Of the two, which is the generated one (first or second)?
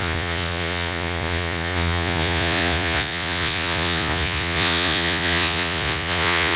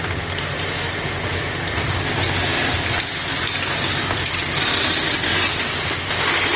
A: first